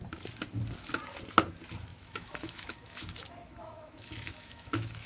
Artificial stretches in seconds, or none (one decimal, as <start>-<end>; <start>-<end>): 1.9-5.1